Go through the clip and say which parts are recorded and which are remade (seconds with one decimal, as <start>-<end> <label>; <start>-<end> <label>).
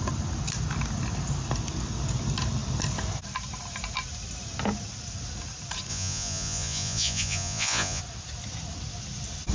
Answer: 0.0-5.9 recorded; 5.9-8.0 remade; 8.0-9.5 recorded